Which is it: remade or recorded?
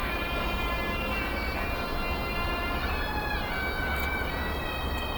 recorded